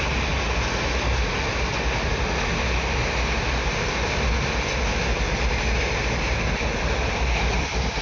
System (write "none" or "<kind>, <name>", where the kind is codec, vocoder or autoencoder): none